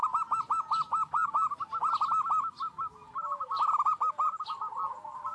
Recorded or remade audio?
recorded